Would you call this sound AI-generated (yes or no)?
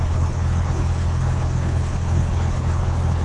yes